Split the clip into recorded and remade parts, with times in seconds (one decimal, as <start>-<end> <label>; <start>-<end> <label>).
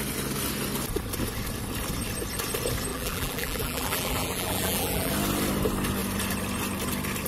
0.0-2.9 recorded; 2.9-5.1 remade; 5.1-7.3 recorded